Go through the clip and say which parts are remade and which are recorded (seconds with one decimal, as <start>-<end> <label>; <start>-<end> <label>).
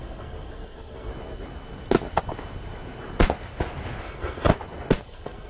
0.0-1.1 remade; 1.1-4.0 recorded; 4.0-4.5 remade; 4.5-5.0 recorded; 5.0-5.5 remade